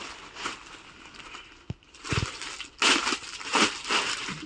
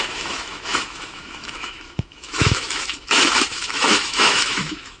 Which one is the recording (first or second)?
first